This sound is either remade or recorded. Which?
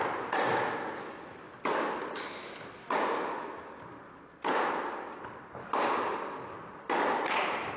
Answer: recorded